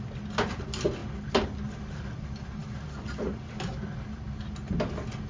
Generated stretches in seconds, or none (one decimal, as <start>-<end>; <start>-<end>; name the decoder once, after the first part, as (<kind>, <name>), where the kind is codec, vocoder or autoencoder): none